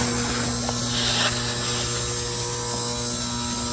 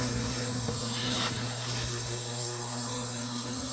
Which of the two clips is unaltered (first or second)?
first